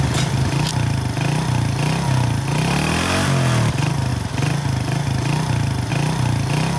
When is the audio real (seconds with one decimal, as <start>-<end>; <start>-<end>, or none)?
0.0-6.8

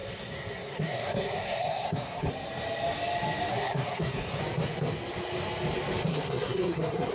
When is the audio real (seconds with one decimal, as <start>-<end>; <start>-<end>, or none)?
2.3-3.5; 4.4-6.1

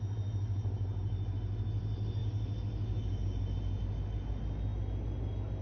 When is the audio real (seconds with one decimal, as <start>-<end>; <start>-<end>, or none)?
0.0-5.6

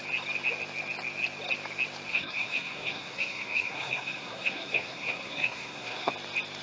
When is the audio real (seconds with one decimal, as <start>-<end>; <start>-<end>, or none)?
0.0-2.1; 6.1-6.6

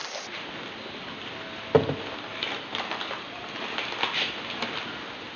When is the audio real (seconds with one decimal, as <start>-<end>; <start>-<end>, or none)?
0.0-5.4

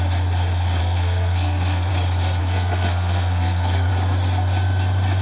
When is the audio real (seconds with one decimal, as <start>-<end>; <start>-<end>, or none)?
0.0-0.8; 1.9-2.4; 3.9-5.2

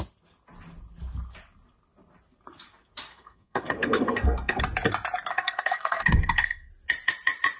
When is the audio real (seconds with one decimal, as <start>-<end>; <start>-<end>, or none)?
0.0-3.1; 4.6-5.3; 6.7-7.6